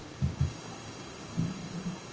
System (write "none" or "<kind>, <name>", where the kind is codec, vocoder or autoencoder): codec, DAC